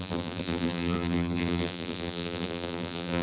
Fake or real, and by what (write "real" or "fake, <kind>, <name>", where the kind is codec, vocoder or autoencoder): fake, vocoder, BigVGAN v2